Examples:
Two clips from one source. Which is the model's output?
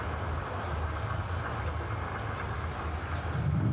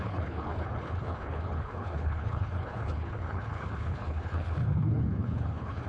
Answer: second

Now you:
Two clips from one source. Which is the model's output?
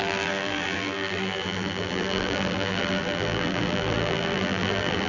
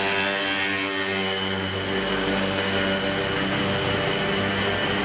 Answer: first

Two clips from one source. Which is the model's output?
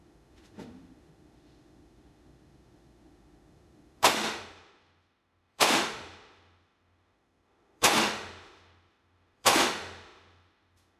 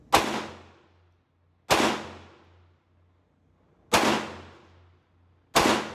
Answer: first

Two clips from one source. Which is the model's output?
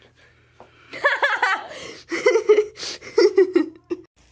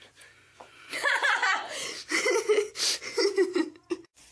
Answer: second